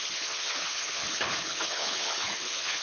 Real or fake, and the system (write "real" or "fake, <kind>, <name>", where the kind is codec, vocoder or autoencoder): fake, codec, HILCodec